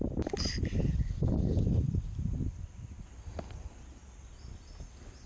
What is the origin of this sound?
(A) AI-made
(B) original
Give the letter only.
B